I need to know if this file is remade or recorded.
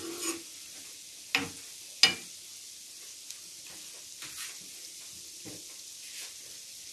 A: recorded